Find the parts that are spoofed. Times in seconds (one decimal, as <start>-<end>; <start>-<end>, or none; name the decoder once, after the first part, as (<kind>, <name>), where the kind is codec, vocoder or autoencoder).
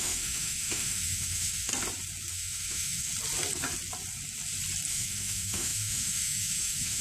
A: 0.0-1.7 (autoencoder, DAC-VAE); 2.3-3.1; 4.9-7.0